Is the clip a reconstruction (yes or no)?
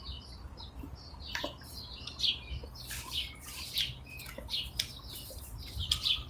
no